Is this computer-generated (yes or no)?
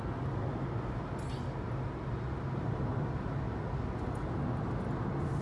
no